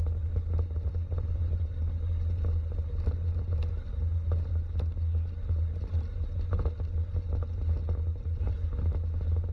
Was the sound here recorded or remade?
recorded